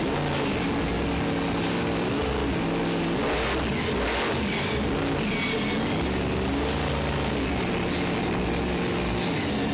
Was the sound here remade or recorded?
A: recorded